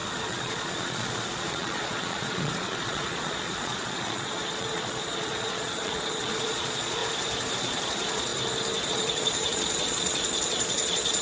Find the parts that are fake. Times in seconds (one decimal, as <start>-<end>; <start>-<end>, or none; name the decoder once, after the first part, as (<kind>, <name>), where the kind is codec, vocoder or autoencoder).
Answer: 0.0-7.0 (vocoder, Vocos); 7.6-8.3; 8.9-11.2